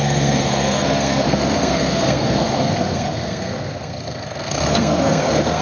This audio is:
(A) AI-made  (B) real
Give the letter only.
A